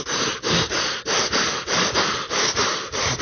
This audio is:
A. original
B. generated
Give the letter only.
B